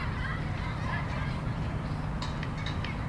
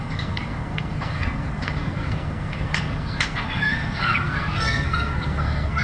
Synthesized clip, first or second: second